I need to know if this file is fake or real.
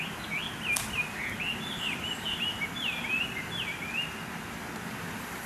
real